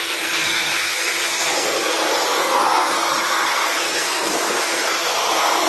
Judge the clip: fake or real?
fake